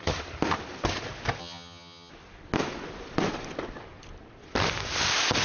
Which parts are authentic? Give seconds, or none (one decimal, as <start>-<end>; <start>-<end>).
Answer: 0.0-1.4; 2.1-5.4